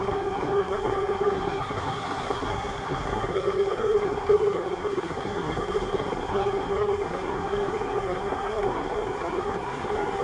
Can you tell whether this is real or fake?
fake